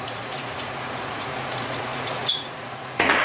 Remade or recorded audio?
remade